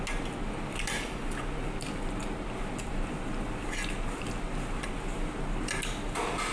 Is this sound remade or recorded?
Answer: recorded